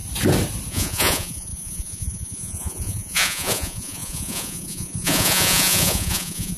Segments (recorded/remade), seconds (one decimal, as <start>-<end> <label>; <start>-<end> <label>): 0.0-0.7 recorded; 0.7-6.6 remade